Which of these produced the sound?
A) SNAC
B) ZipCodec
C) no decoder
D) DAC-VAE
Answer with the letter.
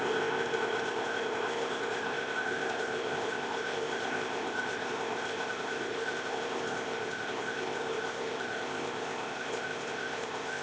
B